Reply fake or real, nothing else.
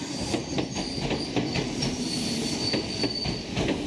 real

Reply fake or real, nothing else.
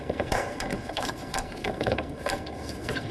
fake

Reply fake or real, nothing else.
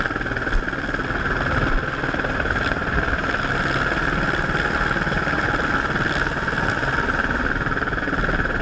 real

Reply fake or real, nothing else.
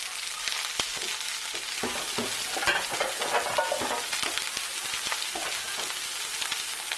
real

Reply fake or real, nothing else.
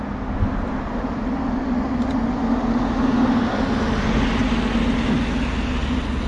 real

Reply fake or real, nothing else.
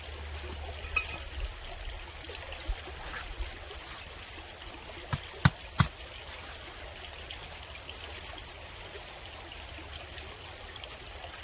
real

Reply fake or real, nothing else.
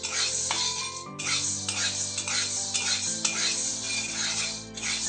real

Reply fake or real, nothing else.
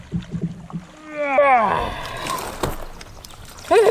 real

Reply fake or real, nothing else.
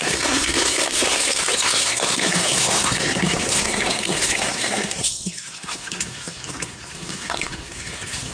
fake